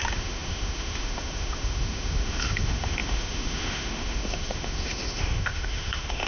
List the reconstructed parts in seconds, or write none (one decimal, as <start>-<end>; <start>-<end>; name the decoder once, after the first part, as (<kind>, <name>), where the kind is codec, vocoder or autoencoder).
0.0-6.3 (autoencoder, DAC-VAE)